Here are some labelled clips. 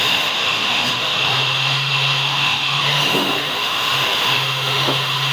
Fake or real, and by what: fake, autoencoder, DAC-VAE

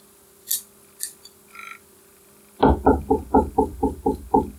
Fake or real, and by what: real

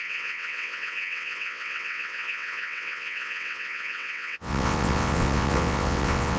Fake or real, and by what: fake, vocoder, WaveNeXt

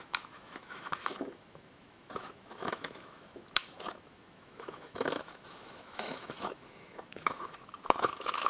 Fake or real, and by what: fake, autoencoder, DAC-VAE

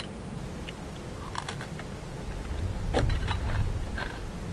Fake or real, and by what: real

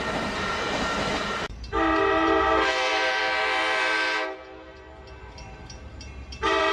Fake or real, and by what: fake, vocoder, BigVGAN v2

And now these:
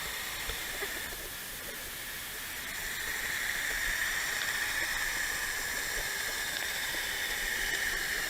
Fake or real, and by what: real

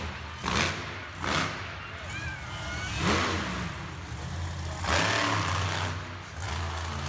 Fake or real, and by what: real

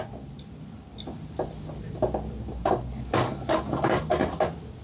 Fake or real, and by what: real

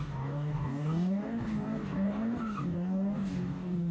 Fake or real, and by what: fake, codec, DAC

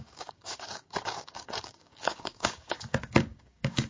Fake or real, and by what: fake, codec, DAC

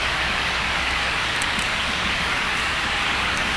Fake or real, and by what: fake, codec, DAC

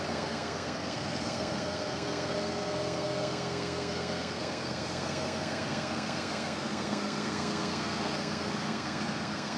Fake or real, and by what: fake, codec, SNAC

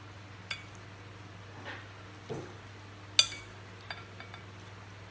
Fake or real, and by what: real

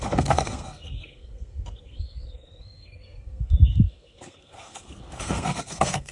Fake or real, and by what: fake, codec, SNAC